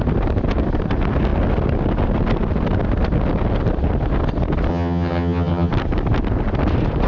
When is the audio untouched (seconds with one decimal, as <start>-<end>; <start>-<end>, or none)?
0.0-4.7; 5.7-7.1